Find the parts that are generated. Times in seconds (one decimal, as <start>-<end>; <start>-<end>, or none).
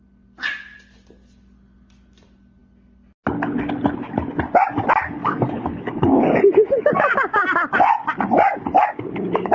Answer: 5.2-6.9